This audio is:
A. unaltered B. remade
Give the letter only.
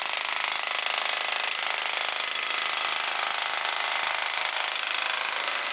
A